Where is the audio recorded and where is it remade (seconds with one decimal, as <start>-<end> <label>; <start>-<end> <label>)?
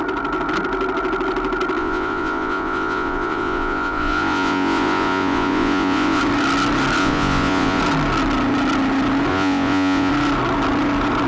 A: 0.0-1.8 recorded; 1.8-6.2 remade; 6.2-7.0 recorded; 7.0-7.8 remade; 7.8-9.3 recorded; 9.3-10.1 remade; 10.1-11.3 recorded